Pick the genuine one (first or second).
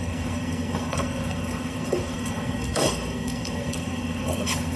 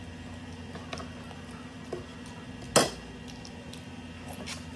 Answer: second